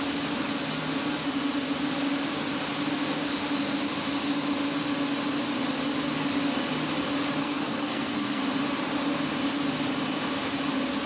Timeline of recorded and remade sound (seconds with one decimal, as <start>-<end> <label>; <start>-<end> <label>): 0.0-7.4 recorded; 7.4-8.4 remade; 8.4-11.1 recorded